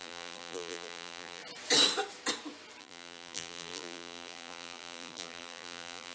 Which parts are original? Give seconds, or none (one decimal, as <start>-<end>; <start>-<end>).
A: 1.4-2.8